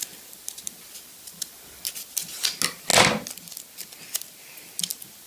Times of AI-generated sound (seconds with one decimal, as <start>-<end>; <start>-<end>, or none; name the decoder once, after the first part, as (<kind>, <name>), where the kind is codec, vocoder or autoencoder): none